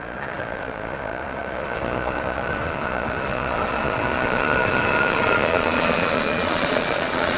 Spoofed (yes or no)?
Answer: yes